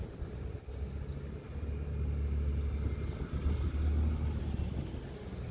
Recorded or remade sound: recorded